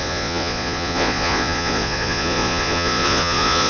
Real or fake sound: fake